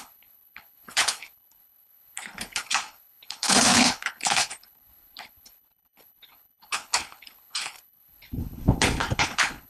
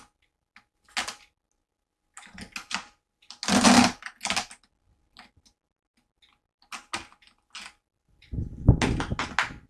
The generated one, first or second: first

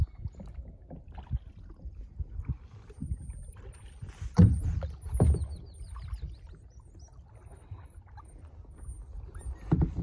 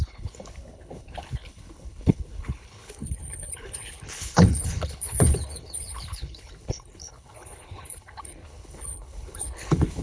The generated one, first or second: second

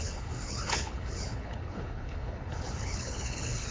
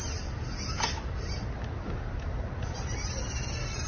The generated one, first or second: first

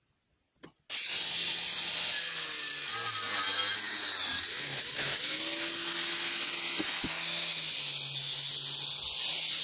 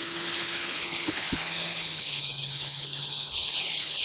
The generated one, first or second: second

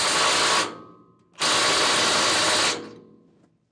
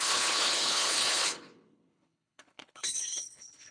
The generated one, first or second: second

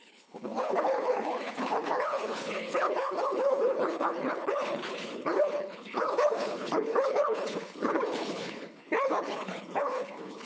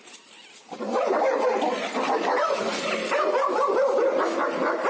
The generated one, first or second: first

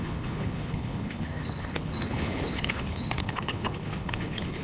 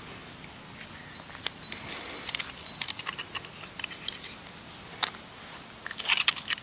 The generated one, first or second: first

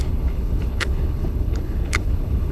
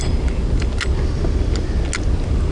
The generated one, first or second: first